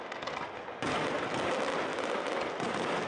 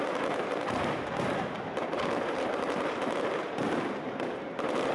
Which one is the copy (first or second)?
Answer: second